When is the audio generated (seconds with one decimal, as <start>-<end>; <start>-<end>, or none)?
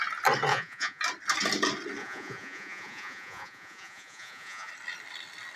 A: 0.5-1.0; 2.0-4.7